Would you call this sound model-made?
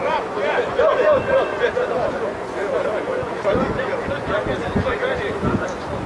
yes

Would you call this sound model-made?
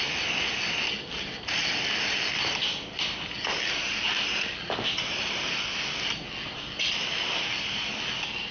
no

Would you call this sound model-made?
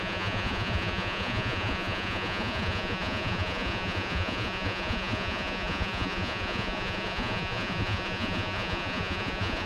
yes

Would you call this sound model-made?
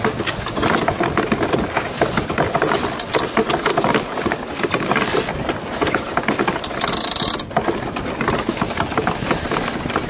no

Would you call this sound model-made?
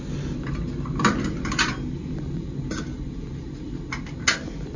no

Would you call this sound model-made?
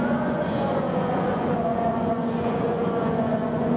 yes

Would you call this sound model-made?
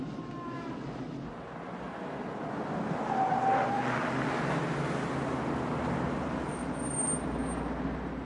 no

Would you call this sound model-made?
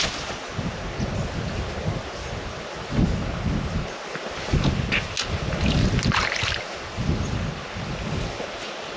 no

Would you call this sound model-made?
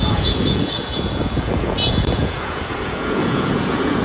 yes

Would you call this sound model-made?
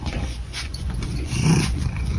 yes